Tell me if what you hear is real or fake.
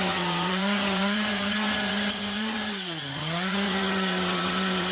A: fake